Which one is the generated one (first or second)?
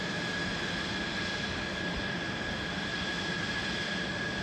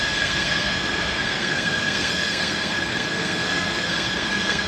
second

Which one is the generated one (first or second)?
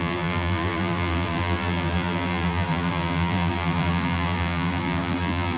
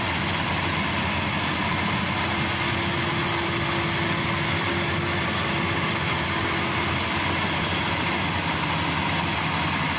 first